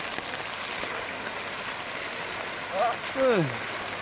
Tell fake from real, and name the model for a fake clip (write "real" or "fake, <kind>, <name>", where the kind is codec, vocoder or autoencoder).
real